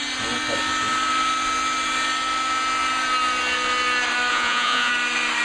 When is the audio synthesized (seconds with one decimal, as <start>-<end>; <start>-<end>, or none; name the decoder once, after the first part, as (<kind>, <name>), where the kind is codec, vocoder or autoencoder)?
4.3-4.9 (vocoder, Vocos)